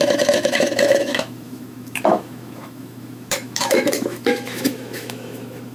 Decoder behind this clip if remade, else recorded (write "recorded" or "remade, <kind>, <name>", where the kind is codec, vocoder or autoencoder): remade, autoencoder, DAC-VAE